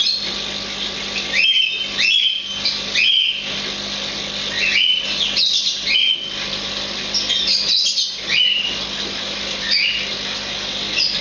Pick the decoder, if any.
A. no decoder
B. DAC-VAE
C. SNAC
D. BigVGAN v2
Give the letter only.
A